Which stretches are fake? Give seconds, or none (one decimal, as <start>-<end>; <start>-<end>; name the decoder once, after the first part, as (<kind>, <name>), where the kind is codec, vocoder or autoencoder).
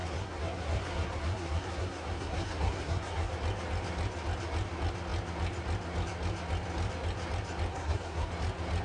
0.0-3.3 (codec, SNAC); 7.7-8.3